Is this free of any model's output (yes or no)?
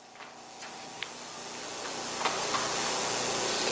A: yes